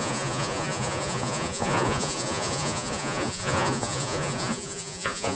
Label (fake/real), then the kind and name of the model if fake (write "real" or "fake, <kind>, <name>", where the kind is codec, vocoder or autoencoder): fake, vocoder, Vocos